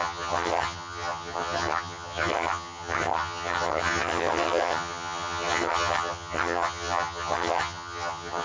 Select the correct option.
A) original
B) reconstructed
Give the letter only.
B